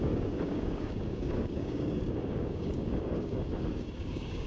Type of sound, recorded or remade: remade